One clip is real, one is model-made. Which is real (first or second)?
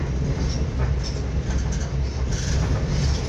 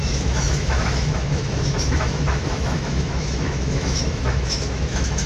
first